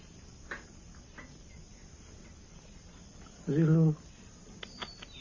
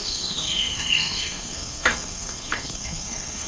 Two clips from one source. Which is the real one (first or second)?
first